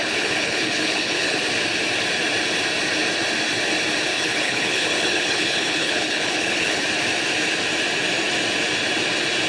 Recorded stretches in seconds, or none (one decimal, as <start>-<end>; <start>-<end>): 1.4-4.1; 6.8-9.5